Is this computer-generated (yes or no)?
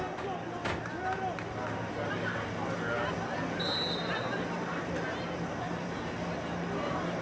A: no